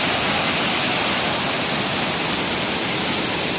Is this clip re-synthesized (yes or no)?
no